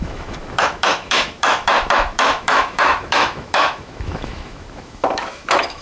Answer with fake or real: fake